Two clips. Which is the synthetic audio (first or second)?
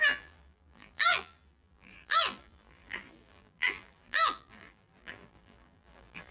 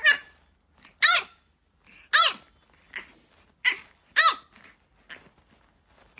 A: first